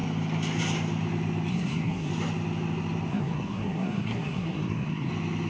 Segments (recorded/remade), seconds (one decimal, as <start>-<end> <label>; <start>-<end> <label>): 0.0-1.5 recorded; 1.5-2.1 remade; 2.1-3.1 recorded; 3.1-5.1 remade; 5.1-5.5 recorded